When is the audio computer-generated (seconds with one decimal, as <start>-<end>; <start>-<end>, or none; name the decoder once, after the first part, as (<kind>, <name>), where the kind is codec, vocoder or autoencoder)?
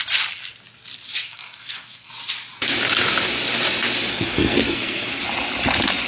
1.2-2.1 (codec, SNAC); 4.1-5.2